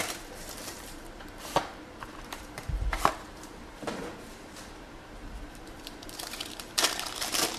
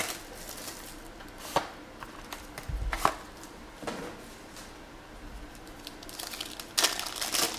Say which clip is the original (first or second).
second